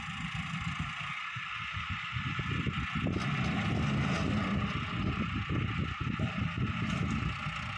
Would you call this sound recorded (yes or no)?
yes